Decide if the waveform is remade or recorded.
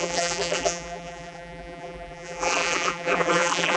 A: remade